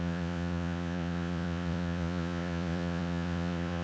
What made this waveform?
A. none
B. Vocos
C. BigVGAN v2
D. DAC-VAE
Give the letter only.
B